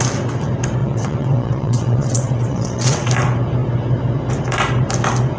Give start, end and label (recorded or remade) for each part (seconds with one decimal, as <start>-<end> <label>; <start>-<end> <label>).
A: 0.0-0.8 recorded; 0.8-3.1 remade; 3.1-5.4 recorded